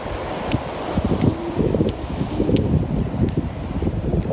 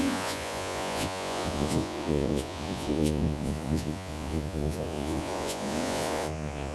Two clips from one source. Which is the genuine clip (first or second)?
first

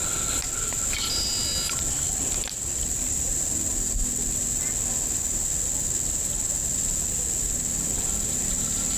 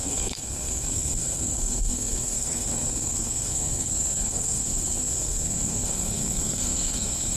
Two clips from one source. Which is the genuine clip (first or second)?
first